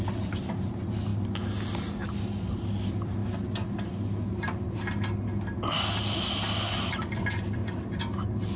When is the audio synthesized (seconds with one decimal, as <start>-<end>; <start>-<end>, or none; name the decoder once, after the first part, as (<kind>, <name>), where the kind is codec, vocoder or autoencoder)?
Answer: 0.0-1.1 (vocoder, BigVGAN v2); 2.5-3.2; 6.9-7.6